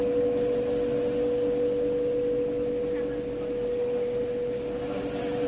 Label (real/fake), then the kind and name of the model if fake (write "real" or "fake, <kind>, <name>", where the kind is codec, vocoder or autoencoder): real